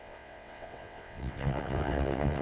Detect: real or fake fake